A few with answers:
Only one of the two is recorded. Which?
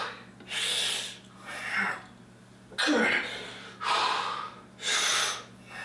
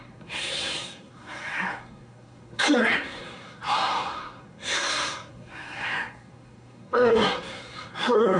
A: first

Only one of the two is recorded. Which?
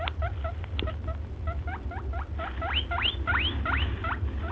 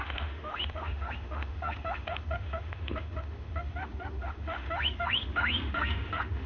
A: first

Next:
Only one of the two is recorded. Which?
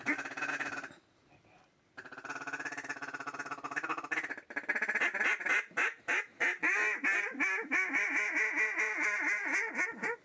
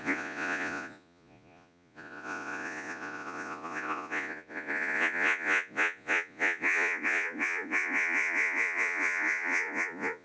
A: first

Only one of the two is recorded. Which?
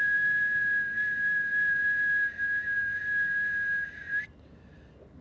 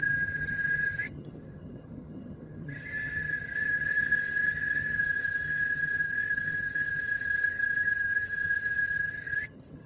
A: first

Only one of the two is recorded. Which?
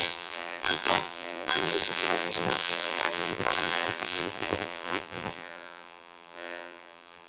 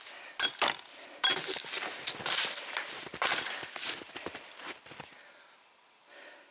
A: second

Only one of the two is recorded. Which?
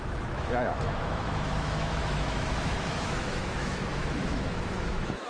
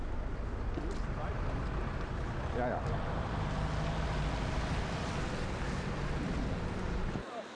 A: second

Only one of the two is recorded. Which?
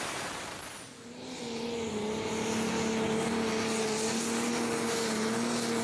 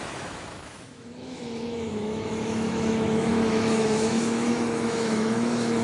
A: first